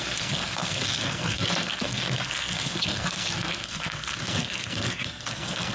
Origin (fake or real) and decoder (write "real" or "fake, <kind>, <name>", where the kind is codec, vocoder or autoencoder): fake, codec, SNAC